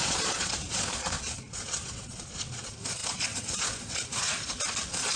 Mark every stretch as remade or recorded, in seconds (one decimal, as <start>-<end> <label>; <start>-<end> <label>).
0.0-5.2 remade